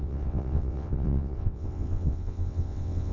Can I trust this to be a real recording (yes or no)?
no